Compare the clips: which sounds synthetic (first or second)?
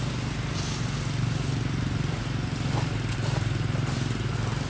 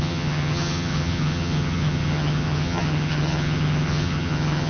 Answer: second